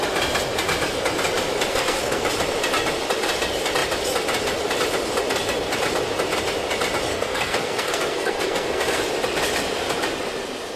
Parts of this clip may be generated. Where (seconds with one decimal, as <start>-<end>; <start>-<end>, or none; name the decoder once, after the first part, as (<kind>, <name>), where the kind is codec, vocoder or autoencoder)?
1.7-2.3 (codec, SNAC); 7.1-9.0